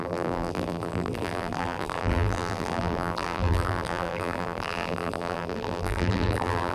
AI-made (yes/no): yes